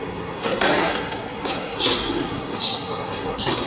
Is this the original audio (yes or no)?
no